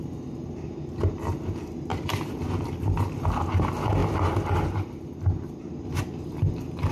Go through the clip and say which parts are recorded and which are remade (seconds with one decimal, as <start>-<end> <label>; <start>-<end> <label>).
0.0-6.9 recorded